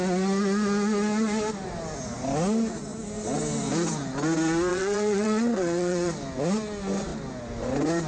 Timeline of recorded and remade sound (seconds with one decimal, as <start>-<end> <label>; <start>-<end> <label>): 0.0-4.7 recorded; 4.7-6.1 remade; 6.1-8.1 recorded

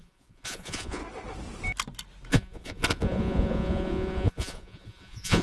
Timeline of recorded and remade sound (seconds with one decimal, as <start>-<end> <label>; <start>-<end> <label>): 0.0-1.0 remade; 1.0-2.3 recorded; 2.3-5.4 remade

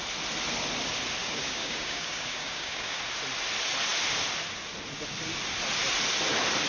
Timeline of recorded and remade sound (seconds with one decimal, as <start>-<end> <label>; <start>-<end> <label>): 0.0-1.2 recorded; 1.2-3.0 remade; 3.0-6.7 recorded

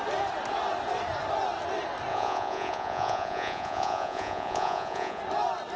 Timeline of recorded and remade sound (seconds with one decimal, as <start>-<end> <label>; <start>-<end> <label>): 0.0-2.1 recorded; 2.1-5.2 remade; 5.2-5.8 recorded

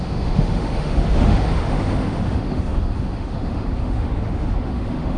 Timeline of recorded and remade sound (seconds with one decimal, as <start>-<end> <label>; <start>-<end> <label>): 0.0-5.2 remade

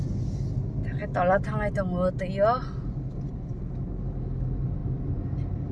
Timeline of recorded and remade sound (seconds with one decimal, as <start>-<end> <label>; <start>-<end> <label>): 0.0-5.7 recorded

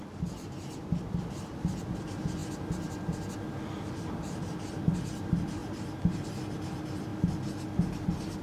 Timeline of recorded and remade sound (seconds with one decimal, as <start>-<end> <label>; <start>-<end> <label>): 0.0-7.1 remade; 7.1-7.9 recorded; 7.9-8.4 remade